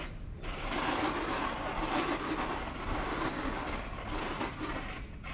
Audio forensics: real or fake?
real